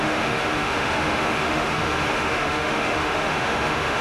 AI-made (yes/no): yes